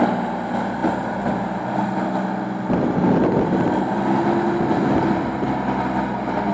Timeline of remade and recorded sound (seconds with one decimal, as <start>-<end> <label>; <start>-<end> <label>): 0.0-6.5 recorded